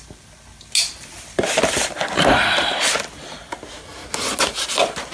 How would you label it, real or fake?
real